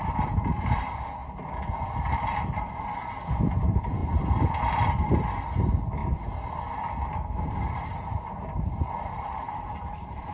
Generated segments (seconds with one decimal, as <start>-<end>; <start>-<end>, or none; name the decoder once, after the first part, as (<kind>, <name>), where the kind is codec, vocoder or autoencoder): 0.0-1.2 (vocoder, BigVGAN v2); 1.8-6.0; 7.1-10.3